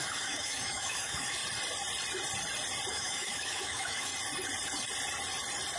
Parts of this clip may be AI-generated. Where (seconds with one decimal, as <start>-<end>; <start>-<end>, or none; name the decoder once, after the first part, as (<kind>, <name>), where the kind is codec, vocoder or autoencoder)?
0.0-1.4 (autoencoder, DAC-VAE); 2.9-4.1